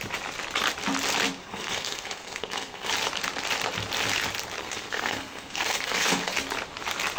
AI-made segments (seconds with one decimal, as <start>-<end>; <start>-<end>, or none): 1.4-2.9; 4.6-6.2